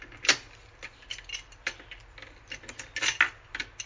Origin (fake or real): real